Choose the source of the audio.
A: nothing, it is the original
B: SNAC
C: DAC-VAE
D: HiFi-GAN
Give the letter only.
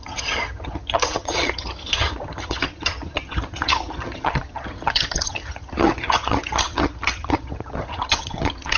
D